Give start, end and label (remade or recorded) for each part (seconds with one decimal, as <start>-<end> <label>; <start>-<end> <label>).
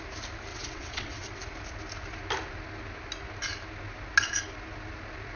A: 0.0-0.5 recorded; 0.5-1.4 remade; 1.4-5.4 recorded